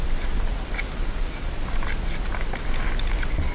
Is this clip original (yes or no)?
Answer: yes